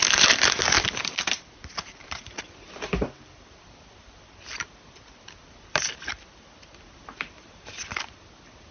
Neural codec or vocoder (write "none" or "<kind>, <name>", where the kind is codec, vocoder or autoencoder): none